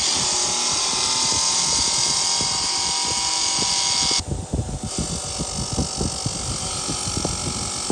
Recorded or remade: recorded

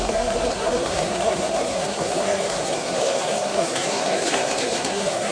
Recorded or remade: remade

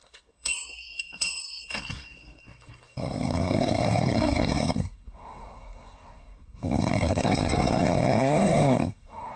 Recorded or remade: remade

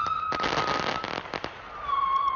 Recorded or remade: recorded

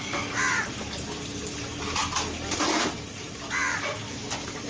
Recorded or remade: recorded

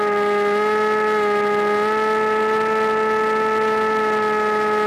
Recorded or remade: recorded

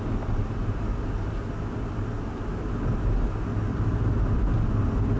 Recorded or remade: recorded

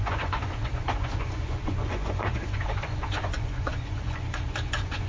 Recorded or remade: remade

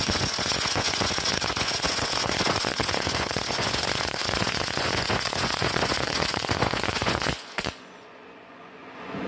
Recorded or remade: remade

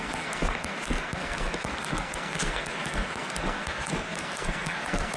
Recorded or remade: remade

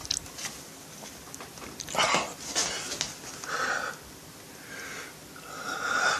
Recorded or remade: recorded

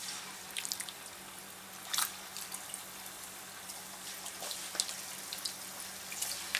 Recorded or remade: recorded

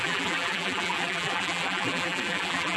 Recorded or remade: remade